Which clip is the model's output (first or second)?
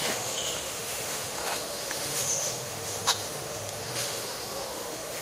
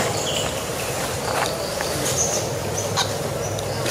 first